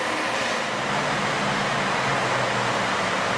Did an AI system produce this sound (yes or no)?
no